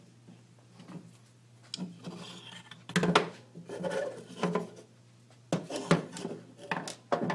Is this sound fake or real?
real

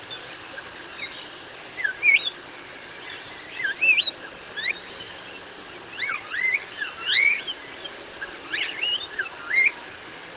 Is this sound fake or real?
real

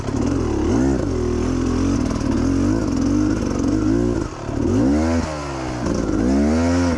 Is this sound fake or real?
real